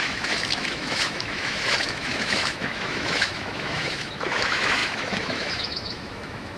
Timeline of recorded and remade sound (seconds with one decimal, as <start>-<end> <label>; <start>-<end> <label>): 0.0-6.6 remade